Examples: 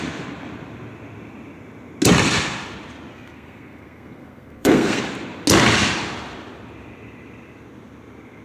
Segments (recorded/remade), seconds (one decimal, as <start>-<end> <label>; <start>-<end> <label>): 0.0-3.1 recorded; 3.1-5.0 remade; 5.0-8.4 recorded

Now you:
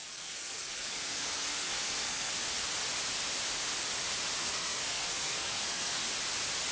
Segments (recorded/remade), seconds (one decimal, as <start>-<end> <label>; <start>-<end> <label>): 0.0-2.3 remade; 2.3-4.4 recorded; 4.4-6.0 remade; 6.0-6.7 recorded

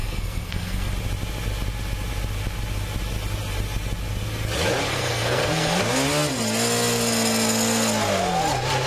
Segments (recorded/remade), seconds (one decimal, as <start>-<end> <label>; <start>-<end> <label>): 0.0-0.9 remade; 0.9-4.9 recorded; 4.9-5.8 remade; 5.8-8.9 recorded